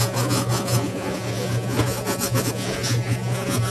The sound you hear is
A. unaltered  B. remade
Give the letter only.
B